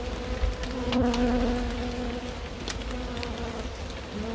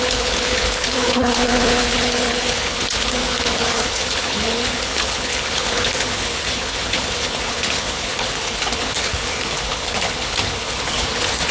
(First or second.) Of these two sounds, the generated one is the second